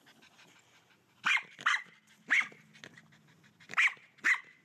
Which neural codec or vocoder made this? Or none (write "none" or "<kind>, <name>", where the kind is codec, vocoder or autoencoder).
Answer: none